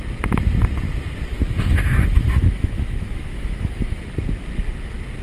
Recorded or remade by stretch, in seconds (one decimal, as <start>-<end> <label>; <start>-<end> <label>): 0.0-1.3 recorded; 1.3-4.0 remade; 4.0-5.2 recorded